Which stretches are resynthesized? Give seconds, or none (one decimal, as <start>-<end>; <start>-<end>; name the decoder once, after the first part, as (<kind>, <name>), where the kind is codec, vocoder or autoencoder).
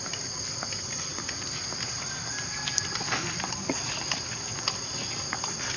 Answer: none